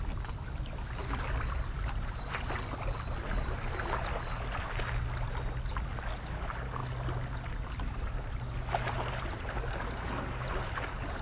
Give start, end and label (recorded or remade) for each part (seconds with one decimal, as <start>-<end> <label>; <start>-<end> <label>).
0.0-1.0 recorded; 1.0-3.5 remade; 3.5-11.2 recorded